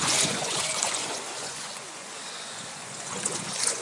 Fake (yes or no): yes